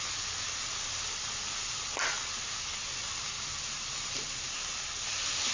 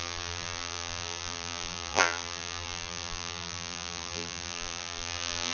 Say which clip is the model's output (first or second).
second